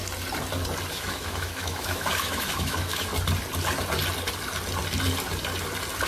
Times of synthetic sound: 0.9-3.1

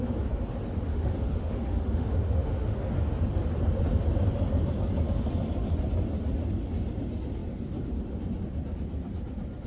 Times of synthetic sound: 0.9-3.2

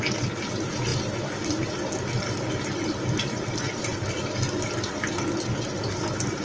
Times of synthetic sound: none